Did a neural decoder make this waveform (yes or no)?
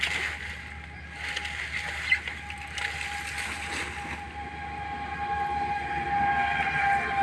no